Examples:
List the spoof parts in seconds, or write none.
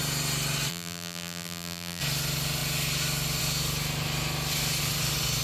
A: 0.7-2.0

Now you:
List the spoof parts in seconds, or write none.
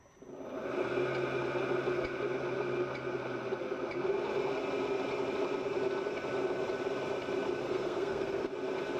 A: 7.6-8.5